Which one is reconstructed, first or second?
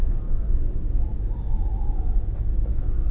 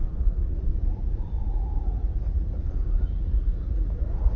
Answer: second